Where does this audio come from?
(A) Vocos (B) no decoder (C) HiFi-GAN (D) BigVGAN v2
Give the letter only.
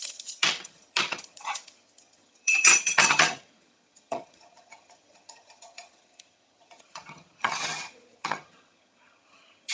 C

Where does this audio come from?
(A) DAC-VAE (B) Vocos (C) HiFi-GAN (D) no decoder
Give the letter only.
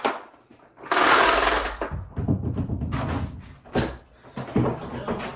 D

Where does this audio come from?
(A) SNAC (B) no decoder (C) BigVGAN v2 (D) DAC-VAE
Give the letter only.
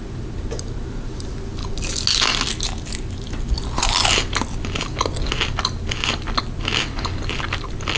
B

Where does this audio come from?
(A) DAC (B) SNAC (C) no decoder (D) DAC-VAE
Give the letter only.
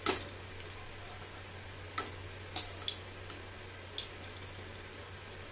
C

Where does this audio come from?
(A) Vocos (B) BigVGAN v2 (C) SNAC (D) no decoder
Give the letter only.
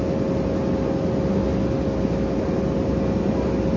D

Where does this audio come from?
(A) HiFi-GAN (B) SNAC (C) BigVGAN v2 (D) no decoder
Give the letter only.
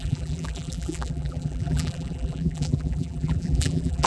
C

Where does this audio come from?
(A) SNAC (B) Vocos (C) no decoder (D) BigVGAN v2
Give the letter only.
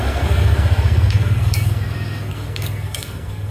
A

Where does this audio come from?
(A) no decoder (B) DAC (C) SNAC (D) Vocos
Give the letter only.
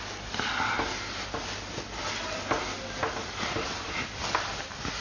A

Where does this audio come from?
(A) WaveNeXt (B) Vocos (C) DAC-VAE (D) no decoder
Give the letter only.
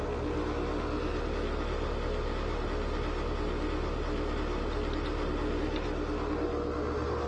D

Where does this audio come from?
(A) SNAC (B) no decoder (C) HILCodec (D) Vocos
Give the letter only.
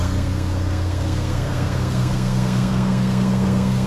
A